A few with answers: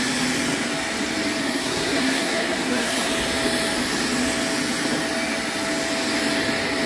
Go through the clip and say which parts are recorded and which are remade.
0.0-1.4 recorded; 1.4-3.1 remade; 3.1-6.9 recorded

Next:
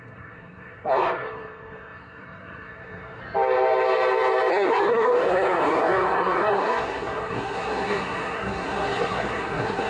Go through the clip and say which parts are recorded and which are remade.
0.0-3.2 remade; 3.2-4.5 recorded; 4.5-9.9 remade

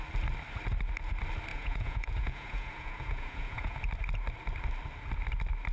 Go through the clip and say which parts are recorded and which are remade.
0.0-1.5 recorded; 1.5-3.8 remade; 3.8-5.7 recorded